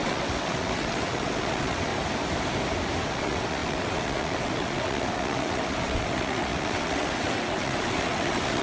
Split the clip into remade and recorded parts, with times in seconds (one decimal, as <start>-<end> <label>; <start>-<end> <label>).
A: 0.0-1.9 remade; 1.9-3.1 recorded; 3.1-8.6 remade